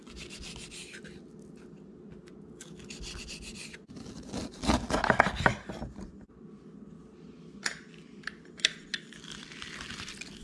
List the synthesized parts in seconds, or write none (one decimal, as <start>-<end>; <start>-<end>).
none